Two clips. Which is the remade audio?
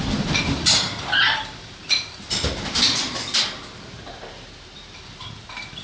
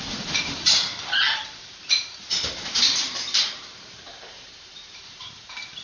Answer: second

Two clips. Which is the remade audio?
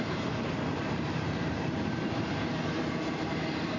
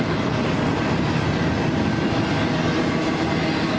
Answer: first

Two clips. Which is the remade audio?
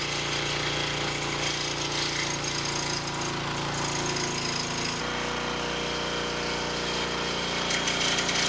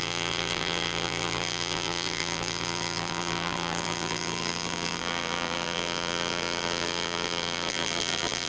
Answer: second